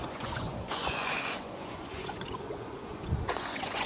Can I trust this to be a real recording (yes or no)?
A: no